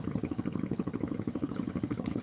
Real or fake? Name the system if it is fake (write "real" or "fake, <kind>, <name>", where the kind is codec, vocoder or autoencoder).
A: fake, codec, HILCodec